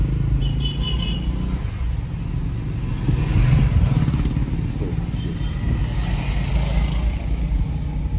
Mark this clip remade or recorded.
recorded